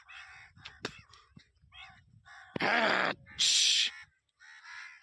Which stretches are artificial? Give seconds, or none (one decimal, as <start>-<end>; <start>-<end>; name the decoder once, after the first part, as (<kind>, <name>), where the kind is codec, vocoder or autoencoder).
none